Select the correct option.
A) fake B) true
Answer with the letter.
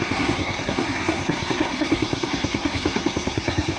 A